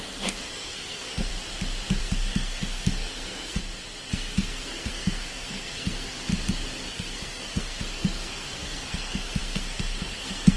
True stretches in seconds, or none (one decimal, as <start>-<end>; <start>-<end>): 1.3-2.0; 3.6-4.1; 6.3-6.9